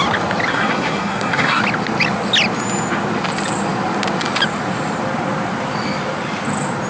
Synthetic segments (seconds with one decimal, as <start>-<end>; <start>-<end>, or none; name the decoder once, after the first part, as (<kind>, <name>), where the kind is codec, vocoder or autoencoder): 0.5-1.6 (codec, SNAC)